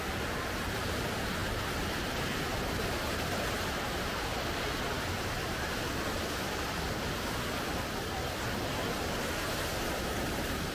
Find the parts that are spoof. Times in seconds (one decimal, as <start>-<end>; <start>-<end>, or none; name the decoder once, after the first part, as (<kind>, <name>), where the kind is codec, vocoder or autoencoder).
0.0-4.3 (vocoder, BigVGAN v2); 9.4-10.7